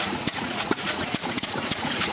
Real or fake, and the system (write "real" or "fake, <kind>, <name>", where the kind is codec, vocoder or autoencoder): fake, vocoder, Vocos